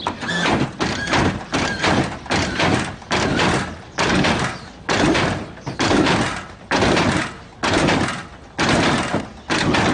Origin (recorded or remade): recorded